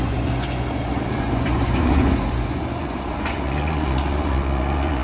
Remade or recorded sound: remade